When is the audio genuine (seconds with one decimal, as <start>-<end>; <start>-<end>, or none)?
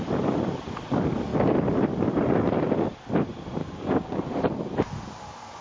0.0-3.6; 4.2-5.6